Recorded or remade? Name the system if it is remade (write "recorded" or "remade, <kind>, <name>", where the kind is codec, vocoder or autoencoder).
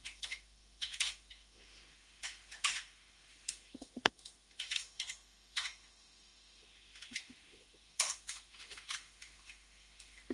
remade, autoencoder, DAC-VAE